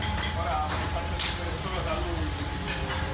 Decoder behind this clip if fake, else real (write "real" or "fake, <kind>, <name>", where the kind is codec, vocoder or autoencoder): real